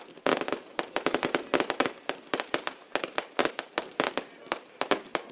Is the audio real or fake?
real